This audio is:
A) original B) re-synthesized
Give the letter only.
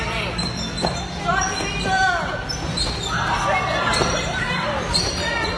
A